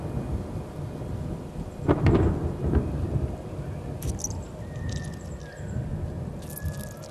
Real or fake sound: real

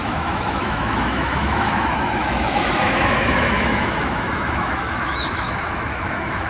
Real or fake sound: fake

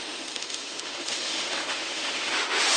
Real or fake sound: fake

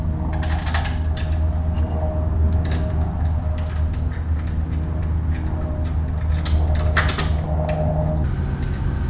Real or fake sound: real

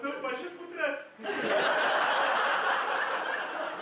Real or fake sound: real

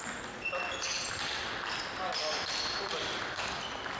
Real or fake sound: real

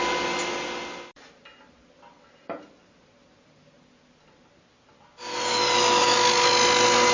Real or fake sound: real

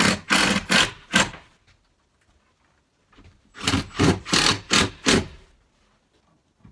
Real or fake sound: real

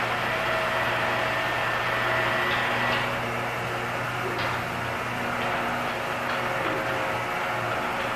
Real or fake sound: real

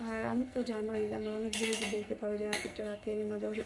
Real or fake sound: fake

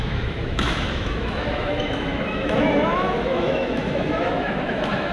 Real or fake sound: fake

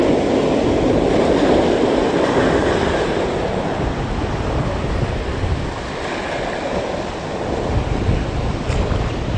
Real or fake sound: real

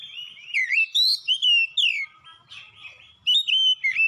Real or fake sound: real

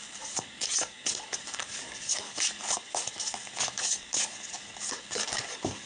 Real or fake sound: fake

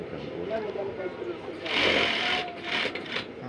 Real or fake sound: fake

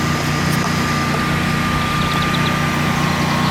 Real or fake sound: real